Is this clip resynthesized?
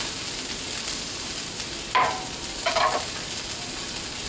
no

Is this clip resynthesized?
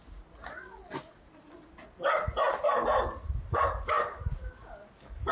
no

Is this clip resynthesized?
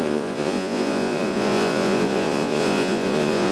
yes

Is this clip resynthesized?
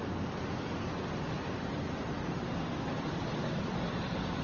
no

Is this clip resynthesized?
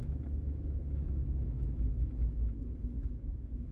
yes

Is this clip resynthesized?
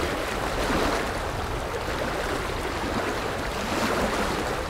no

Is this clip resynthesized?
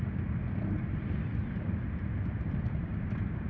no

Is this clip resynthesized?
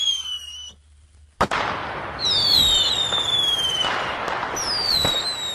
no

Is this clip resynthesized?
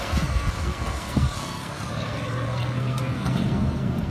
yes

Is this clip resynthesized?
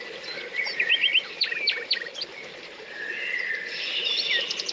no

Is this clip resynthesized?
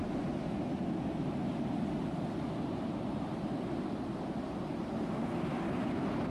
no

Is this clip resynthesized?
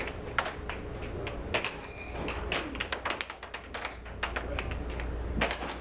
no